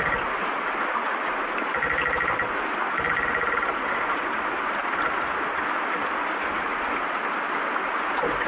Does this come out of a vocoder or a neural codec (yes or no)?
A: no